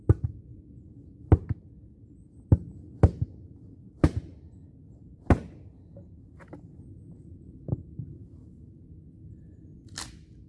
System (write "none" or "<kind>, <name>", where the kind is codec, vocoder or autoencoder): none